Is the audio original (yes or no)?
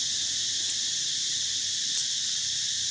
yes